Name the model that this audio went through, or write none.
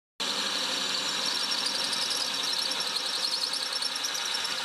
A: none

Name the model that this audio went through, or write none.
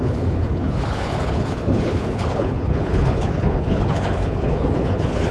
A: codec, HILCodec